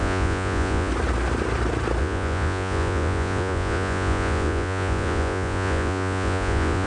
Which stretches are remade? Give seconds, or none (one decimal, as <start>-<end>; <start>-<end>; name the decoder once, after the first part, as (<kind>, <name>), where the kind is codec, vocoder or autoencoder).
0.0-0.9 (vocoder, Vocos); 2.0-6.9